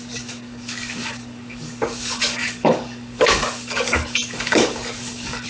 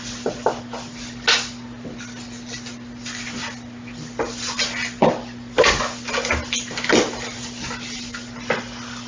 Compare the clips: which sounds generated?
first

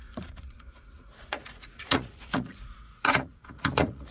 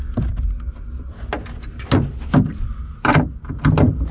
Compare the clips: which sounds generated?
first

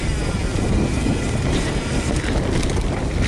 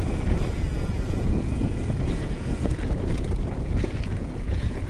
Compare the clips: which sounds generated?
second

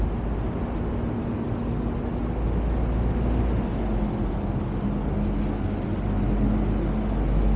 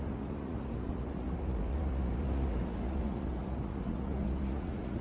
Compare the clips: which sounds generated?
second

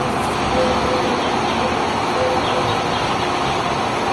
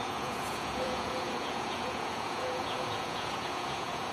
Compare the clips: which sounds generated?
second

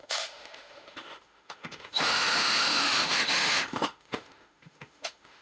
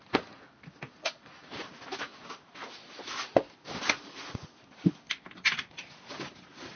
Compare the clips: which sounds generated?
first